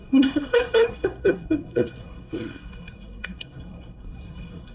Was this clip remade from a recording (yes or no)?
yes